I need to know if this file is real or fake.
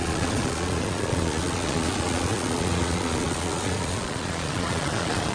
fake